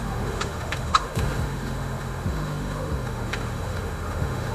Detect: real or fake fake